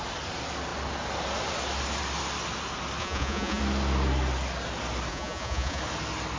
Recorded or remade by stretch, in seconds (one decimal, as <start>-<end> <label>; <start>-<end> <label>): 0.0-3.0 recorded; 3.0-3.6 remade; 3.6-5.1 recorded; 5.1-5.8 remade; 5.8-6.4 recorded